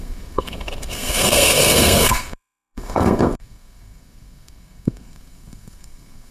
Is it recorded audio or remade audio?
remade